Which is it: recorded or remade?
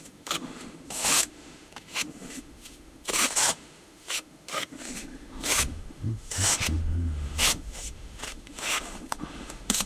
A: remade